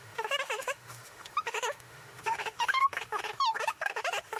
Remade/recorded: remade